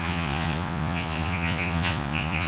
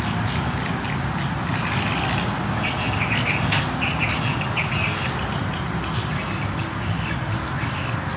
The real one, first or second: second